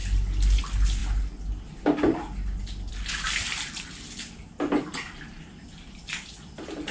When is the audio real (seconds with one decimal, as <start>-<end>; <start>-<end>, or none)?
0.0-6.9